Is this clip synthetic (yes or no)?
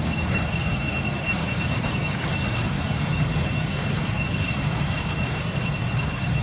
yes